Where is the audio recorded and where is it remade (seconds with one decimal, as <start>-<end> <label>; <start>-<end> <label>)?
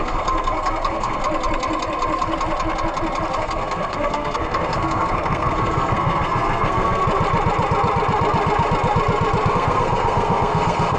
0.0-1.2 remade; 1.2-3.4 recorded; 3.4-7.0 remade; 7.0-9.5 recorded; 9.5-11.0 remade